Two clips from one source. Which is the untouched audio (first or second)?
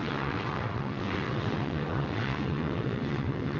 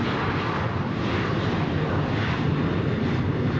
second